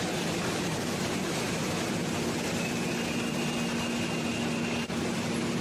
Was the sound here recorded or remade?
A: recorded